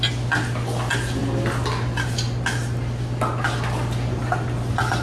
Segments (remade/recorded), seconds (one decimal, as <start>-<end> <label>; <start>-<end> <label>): 0.0-5.0 recorded